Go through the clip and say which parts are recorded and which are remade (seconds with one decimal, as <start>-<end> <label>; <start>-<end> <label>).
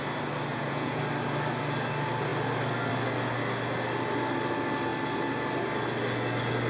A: 0.0-0.5 recorded; 0.5-1.0 remade; 1.0-6.7 recorded